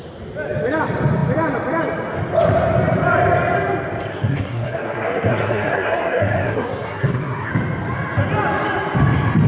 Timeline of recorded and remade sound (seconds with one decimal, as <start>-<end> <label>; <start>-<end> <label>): 0.0-4.1 recorded; 4.1-7.5 remade; 7.5-9.5 recorded